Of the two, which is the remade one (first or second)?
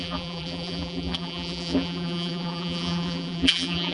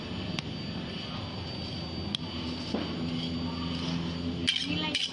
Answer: first